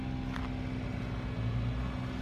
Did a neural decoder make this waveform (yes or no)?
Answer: no